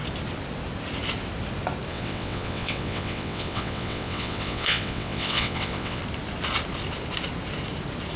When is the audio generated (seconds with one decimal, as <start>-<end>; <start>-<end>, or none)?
1.9-6.0